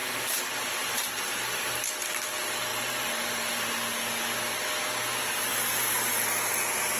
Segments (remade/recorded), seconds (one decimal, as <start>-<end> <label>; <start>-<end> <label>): 0.0-1.2 remade; 1.2-2.7 recorded; 2.7-3.7 remade; 3.7-5.5 recorded; 5.5-6.1 remade; 6.1-7.0 recorded